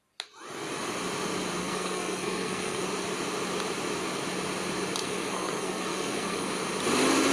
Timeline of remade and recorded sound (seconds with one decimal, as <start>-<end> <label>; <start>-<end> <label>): 0.0-1.6 recorded; 1.6-2.9 remade; 2.9-5.0 recorded; 5.0-6.5 remade; 6.5-7.3 recorded